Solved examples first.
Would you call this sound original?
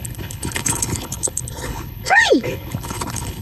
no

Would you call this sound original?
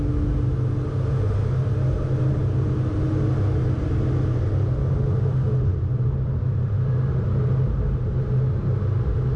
yes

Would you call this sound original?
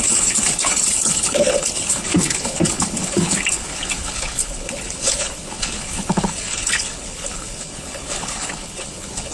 no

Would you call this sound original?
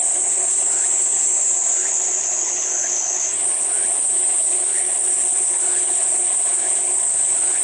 no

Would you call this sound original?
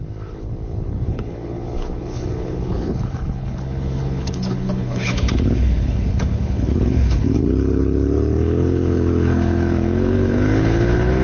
no